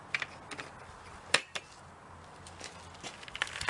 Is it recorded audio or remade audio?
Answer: recorded